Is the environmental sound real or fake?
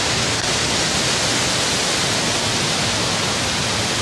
real